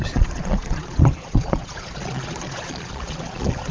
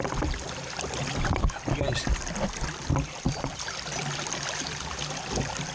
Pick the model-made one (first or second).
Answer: first